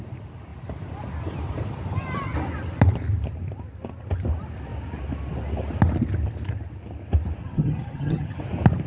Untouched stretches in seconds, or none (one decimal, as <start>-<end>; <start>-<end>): 0.0-7.4; 8.4-8.9